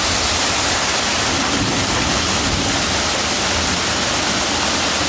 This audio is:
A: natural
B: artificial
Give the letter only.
A